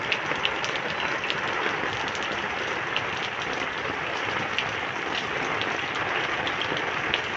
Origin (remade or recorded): recorded